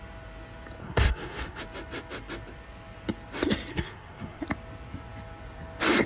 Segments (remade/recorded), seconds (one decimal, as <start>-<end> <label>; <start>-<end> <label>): 0.0-0.8 recorded; 0.8-1.6 remade; 1.6-3.7 recorded; 3.7-4.4 remade; 4.4-6.1 recorded